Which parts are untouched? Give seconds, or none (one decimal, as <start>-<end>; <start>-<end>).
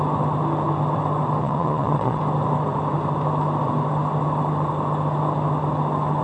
0.0-1.4; 2.2-6.2